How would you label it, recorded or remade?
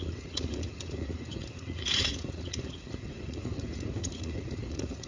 remade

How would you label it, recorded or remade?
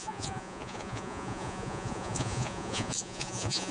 remade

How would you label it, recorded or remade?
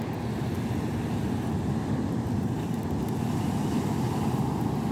recorded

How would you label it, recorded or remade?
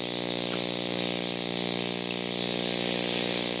recorded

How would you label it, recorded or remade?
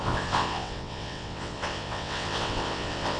remade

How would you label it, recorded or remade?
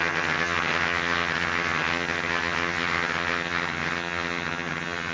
remade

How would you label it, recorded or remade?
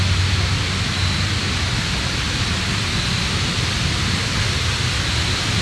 recorded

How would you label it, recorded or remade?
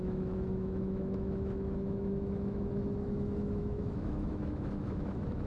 remade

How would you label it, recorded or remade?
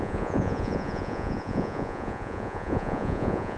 remade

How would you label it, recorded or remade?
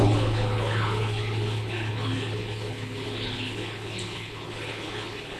remade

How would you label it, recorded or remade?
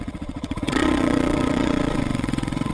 remade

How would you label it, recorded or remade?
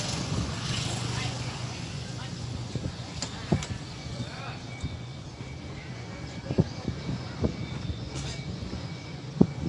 remade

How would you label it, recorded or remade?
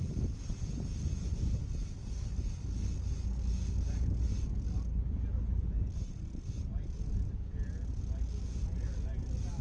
recorded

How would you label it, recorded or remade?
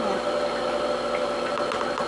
recorded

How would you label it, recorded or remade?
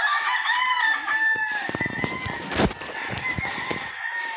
recorded